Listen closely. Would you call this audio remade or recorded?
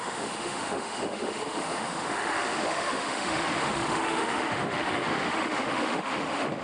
remade